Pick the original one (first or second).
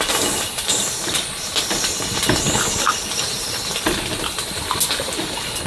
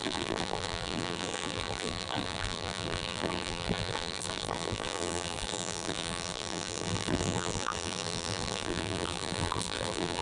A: first